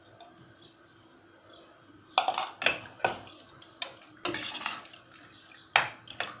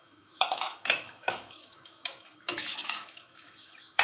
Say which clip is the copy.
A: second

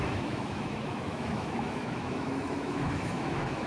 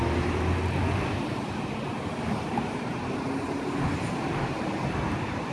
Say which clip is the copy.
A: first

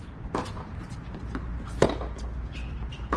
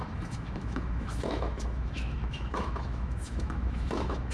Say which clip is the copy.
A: second